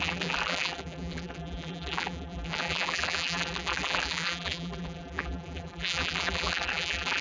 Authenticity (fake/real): fake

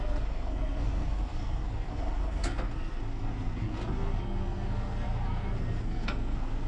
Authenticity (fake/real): fake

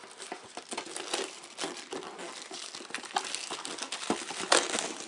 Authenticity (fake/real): real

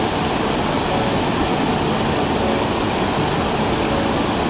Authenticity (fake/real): real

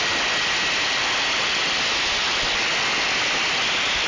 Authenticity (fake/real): real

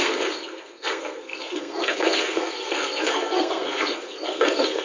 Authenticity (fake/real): fake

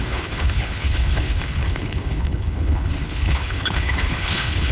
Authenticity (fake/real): fake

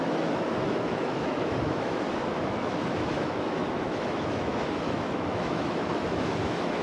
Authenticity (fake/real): fake